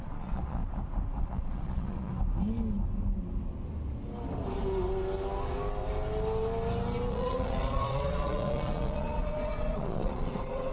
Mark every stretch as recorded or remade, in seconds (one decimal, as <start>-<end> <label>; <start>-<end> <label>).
0.0-0.6 remade; 0.6-1.2 recorded; 1.2-2.1 remade; 2.1-7.1 recorded; 7.1-10.7 remade